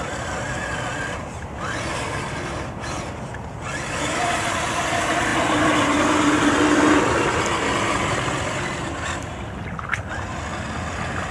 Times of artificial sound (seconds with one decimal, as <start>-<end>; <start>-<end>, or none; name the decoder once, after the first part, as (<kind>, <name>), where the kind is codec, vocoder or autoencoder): none